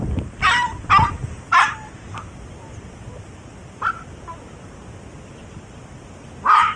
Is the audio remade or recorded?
recorded